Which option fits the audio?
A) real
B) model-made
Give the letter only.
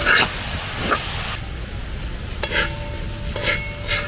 A